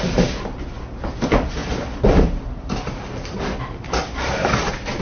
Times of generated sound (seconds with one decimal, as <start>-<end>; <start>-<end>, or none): none